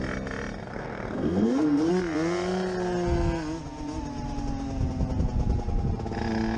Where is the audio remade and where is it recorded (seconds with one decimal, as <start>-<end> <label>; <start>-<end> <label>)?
0.0-0.7 recorded; 0.7-1.9 remade; 1.9-6.6 recorded